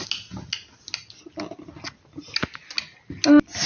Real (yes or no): yes